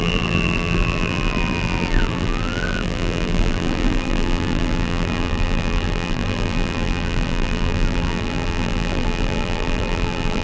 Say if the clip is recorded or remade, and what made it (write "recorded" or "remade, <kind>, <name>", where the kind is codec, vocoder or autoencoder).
remade, vocoder, BigVGAN v2